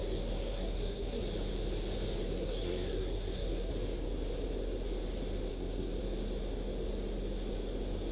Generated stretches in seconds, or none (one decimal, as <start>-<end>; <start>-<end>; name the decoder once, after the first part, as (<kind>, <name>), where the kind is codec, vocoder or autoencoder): 0.0-1.2 (codec, SNAC); 2.2-3.7; 5.5-6.0